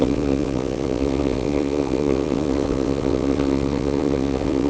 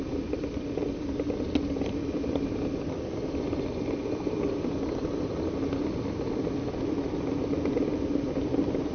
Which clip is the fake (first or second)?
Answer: first